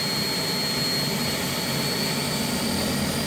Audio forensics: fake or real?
real